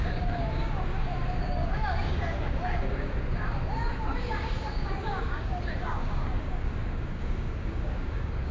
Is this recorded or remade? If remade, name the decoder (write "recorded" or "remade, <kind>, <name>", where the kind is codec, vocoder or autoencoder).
remade, codec, DAC